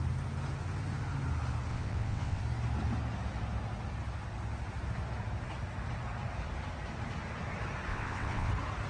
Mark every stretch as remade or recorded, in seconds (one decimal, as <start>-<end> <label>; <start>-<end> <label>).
0.0-1.7 recorded; 1.7-2.4 remade; 2.4-7.9 recorded; 7.9-8.5 remade; 8.5-8.9 recorded

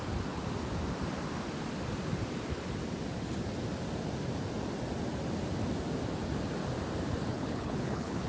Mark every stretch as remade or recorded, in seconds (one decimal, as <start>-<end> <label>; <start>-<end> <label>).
0.0-7.3 recorded; 7.3-8.3 remade